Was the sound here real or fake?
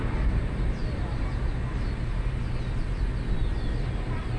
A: real